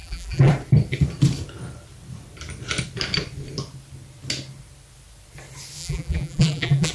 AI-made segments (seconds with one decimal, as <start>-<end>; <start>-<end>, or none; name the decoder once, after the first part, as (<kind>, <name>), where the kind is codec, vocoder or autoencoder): 0.0-0.5 (vocoder, BigVGAN v2); 5.8-6.9